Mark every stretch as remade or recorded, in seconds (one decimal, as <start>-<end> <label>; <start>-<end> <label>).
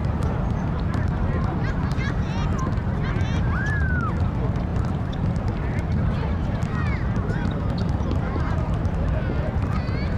0.0-1.4 remade; 1.4-4.7 recorded; 4.7-9.1 remade; 9.1-10.2 recorded